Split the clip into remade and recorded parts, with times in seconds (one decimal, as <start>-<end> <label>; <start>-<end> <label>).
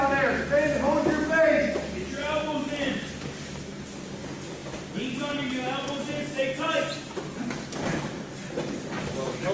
0.0-9.5 recorded